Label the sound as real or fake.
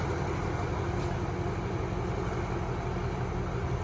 real